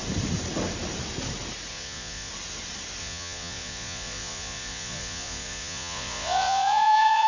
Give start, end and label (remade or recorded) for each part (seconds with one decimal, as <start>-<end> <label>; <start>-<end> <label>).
0.0-1.7 recorded; 1.7-2.3 remade; 2.3-3.0 recorded; 3.0-7.3 remade